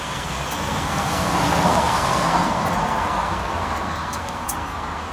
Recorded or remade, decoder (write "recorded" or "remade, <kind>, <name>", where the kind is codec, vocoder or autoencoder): remade, codec, SNAC